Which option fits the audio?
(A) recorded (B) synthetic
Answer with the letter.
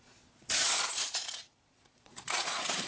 B